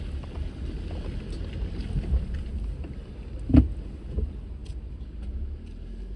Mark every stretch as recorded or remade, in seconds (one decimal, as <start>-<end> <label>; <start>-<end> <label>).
0.0-6.2 recorded